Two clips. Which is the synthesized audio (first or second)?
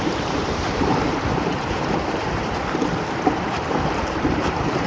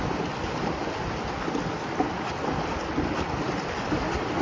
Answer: first